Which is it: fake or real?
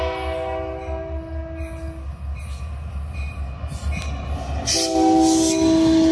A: real